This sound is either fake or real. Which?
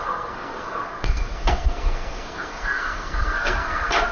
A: fake